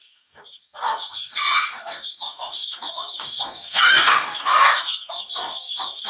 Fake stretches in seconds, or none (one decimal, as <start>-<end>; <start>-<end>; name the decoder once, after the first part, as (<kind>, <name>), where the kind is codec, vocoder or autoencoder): 0.0-6.1 (codec, DAC)